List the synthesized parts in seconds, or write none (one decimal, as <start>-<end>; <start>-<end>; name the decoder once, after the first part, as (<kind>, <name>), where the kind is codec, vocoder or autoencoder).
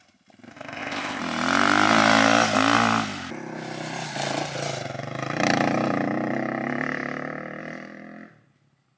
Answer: 0.5-1.2 (codec, ZipCodec)